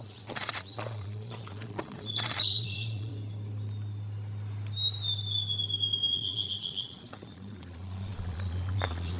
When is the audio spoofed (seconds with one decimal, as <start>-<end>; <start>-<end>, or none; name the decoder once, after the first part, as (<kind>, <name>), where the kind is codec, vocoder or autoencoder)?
0.0-3.1 (vocoder, Vocos); 6.1-9.2